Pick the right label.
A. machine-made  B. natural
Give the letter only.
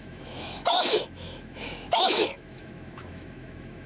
A